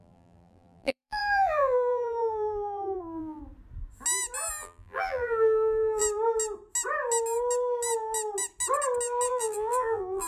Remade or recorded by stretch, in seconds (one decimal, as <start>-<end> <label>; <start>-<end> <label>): 0.0-3.4 remade; 3.4-4.5 recorded; 4.5-6.0 remade; 6.0-9.3 recorded; 9.3-10.3 remade